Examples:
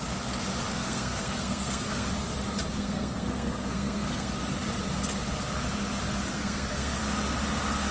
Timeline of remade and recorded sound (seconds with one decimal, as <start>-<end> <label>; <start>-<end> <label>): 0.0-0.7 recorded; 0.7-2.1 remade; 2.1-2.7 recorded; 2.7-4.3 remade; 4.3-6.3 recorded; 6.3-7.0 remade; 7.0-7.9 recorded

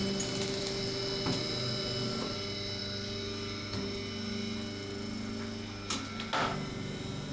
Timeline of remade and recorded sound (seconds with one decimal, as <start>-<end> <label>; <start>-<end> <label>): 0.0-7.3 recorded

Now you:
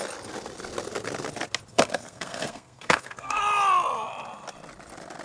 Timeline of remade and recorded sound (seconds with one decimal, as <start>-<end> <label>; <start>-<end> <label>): 0.0-1.7 recorded; 1.7-3.4 remade; 3.4-5.2 recorded

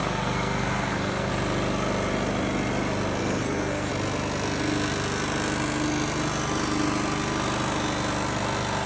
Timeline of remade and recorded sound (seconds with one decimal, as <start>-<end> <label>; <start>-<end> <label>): 0.0-1.3 remade; 1.3-3.2 recorded; 3.2-3.9 remade; 3.9-8.9 recorded